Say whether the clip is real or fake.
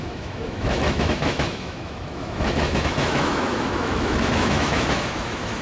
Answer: fake